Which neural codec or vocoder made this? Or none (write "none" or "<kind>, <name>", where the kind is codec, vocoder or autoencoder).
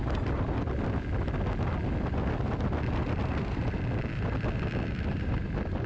none